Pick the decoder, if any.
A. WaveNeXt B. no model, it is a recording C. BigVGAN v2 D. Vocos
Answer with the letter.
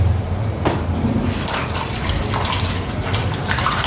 B